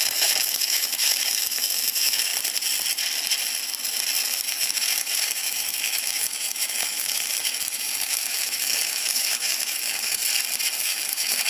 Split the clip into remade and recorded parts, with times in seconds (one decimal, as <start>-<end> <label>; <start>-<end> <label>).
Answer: 0.0-2.3 remade; 2.3-4.5 recorded; 4.5-10.2 remade; 10.2-10.8 recorded; 10.8-11.5 remade